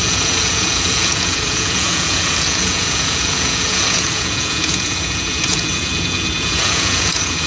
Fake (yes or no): yes